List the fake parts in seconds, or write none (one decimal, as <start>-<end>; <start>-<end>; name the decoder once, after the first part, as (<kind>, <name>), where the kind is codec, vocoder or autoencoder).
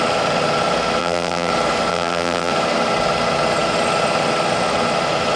1.0-1.5 (vocoder, BigVGAN v2); 1.9-2.5